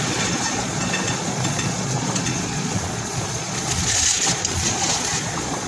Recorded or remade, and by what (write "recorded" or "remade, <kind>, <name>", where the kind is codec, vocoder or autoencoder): remade, vocoder, Vocos